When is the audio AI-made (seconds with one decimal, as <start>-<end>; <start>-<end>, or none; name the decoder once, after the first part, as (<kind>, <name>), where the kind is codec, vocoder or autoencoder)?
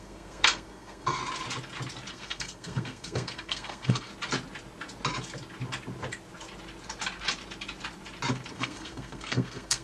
0.0-1.2 (codec, SNAC); 2.1-4.1; 8.5-9.8